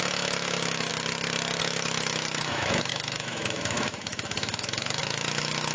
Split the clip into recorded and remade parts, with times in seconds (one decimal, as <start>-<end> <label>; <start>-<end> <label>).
0.0-0.9 remade; 0.9-1.6 recorded; 1.6-5.7 remade